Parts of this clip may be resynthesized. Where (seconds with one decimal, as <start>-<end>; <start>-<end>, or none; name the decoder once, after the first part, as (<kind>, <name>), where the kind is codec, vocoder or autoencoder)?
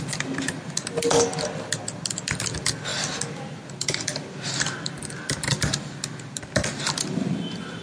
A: none